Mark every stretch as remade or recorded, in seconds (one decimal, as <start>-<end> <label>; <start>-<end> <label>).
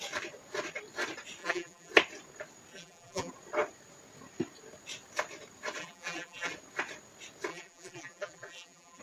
0.0-1.4 recorded; 1.4-1.9 remade; 1.9-2.7 recorded; 2.7-3.3 remade; 3.3-5.8 recorded; 5.8-6.5 remade; 6.5-7.5 recorded; 7.5-9.0 remade